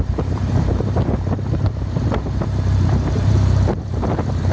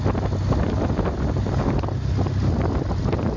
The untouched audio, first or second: second